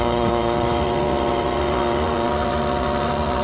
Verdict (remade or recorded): remade